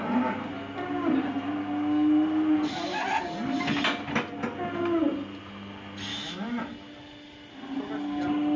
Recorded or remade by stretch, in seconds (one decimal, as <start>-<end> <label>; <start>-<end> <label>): 0.0-6.1 recorded; 6.1-6.6 remade; 6.6-8.6 recorded